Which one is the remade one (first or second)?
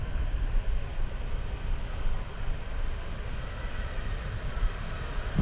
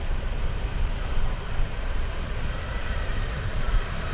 second